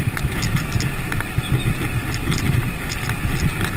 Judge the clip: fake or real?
real